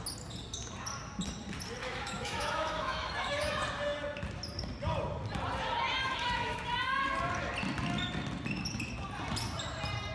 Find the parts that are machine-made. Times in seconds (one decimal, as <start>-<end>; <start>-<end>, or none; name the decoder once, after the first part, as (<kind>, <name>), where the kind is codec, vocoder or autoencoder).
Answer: 1.8-3.5 (autoencoder, DAC-VAE); 6.0-6.6

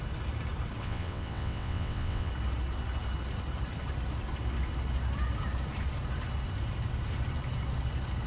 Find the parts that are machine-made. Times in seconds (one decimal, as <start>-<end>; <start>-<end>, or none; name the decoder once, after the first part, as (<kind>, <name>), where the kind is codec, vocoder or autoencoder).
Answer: 0.8-2.3 (vocoder, WaveNeXt)